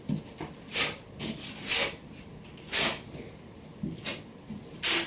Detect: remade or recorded recorded